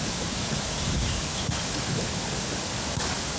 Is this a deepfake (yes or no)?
yes